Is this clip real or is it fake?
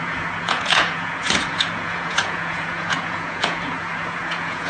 fake